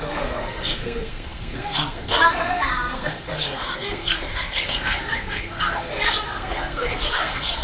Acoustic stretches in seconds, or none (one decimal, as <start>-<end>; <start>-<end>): none